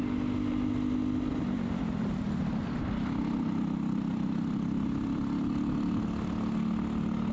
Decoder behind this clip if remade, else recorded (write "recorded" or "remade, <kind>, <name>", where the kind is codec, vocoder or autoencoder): recorded